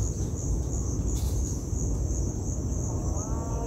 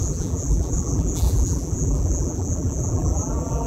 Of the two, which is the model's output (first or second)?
second